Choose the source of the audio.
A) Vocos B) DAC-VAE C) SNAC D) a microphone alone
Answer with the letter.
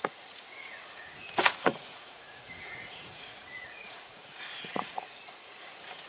A